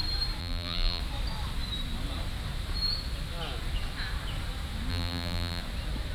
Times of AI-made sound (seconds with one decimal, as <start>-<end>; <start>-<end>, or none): 0.4-1.0; 4.9-5.6